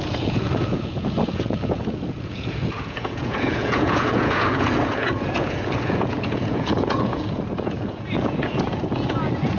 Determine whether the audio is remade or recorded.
remade